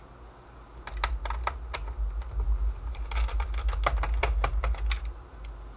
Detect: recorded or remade recorded